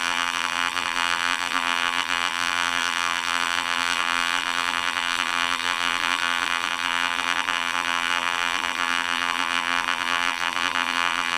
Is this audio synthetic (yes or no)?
yes